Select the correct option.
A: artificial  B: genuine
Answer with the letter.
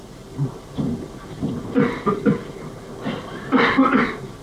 B